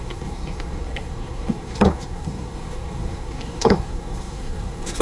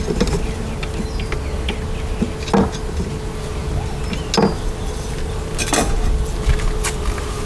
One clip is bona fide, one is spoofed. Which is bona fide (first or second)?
second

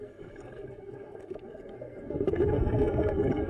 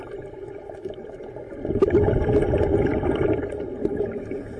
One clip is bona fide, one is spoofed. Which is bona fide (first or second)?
second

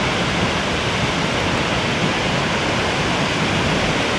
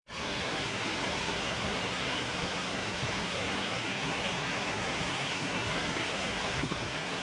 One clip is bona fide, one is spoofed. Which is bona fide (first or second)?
first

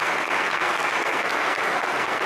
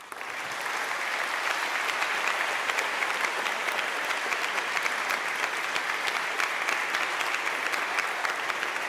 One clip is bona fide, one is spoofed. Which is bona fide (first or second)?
second